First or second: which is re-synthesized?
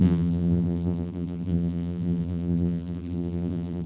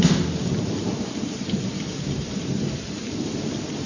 first